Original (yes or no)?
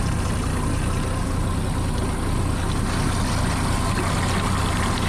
yes